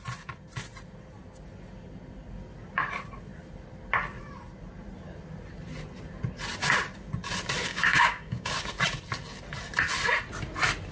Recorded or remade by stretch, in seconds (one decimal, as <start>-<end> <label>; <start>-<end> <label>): 0.0-7.7 recorded; 7.7-8.5 remade; 8.5-10.9 recorded